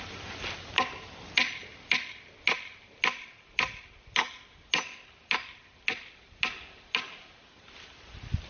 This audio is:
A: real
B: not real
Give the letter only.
A